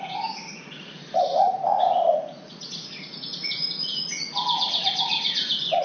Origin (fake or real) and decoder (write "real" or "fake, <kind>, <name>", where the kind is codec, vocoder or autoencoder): fake, vocoder, Vocos